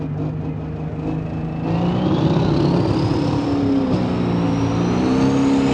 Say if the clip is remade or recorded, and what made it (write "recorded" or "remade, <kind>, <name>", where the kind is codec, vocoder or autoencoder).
recorded